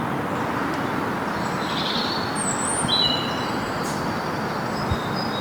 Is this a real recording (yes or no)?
yes